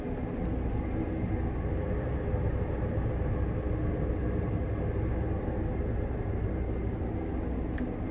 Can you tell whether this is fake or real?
real